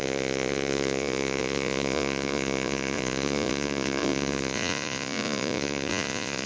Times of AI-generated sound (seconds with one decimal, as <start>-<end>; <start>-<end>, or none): 0.0-6.5